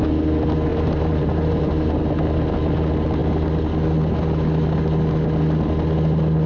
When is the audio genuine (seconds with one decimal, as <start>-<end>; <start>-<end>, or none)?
0.0-0.7; 2.0-6.5